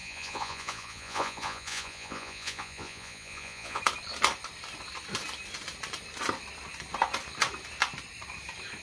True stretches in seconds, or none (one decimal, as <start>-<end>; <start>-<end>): 3.8-8.8